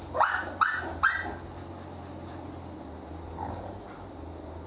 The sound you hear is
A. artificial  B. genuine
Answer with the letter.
B